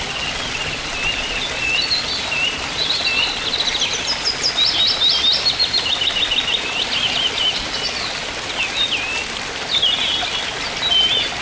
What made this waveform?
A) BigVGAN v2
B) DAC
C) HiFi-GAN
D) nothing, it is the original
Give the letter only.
D